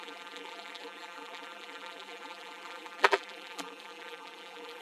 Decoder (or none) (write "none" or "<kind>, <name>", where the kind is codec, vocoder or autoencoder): vocoder, BigVGAN v2